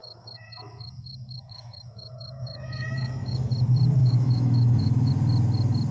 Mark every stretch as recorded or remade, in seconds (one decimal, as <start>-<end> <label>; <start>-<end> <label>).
0.0-3.5 remade; 3.5-4.0 recorded; 4.0-5.1 remade; 5.1-5.9 recorded